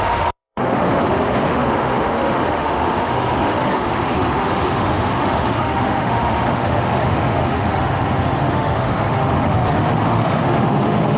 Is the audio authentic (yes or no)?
no